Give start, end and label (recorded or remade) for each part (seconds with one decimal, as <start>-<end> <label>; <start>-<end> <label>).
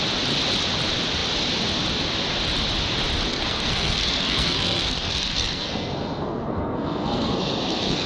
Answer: 0.0-3.3 recorded; 3.3-8.1 remade